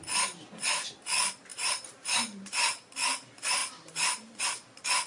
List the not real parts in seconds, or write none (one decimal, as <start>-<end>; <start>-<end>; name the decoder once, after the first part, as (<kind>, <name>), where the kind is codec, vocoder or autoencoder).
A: 1.5-2.9 (vocoder, BigVGAN v2)